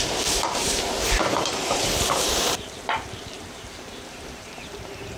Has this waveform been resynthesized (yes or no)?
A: yes